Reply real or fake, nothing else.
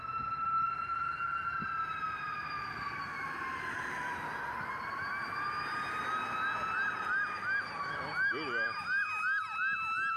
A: real